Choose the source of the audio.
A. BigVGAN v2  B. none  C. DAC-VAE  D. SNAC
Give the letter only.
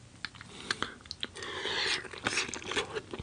B